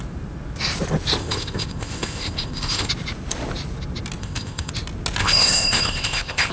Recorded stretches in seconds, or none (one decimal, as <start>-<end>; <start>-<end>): 0.0-1.2; 2.9-4.2; 4.7-5.2